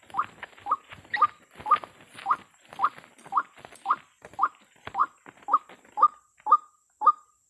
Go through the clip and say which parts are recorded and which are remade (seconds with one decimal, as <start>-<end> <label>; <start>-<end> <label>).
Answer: 0.0-7.5 recorded